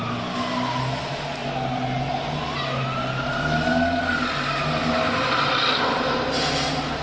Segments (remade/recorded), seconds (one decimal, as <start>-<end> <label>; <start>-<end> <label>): 0.0-7.0 recorded